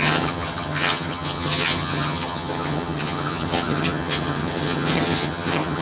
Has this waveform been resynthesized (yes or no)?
yes